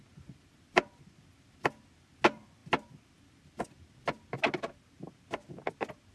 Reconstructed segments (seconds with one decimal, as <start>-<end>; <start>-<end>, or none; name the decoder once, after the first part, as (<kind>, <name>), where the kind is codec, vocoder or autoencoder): none